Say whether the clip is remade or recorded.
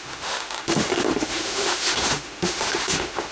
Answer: remade